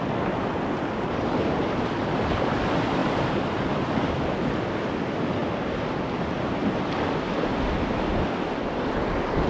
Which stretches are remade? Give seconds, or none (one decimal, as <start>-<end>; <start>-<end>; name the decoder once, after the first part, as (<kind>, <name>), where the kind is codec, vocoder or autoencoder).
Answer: none